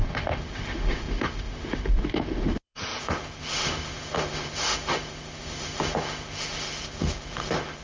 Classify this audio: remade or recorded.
remade